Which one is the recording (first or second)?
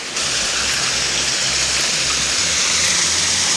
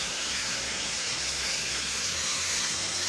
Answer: first